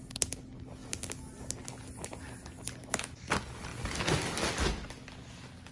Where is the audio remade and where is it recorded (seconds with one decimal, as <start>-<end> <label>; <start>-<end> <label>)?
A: 0.0-2.8 recorded; 2.8-3.3 remade; 3.3-5.7 recorded